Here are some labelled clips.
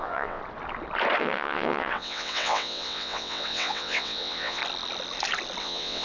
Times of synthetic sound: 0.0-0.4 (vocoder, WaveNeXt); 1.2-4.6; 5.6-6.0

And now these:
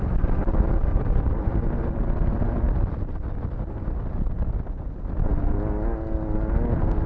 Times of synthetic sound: 0.9-4.7 (vocoder, BigVGAN v2)

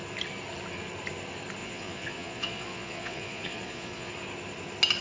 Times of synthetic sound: 1.6-4.1 (vocoder, Vocos)

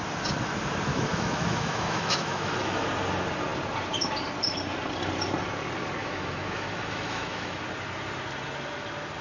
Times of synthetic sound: 0.9-2.8 (autoencoder, DAC-VAE); 6.0-7.6